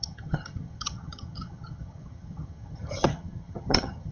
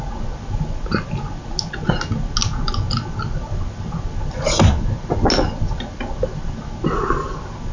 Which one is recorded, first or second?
second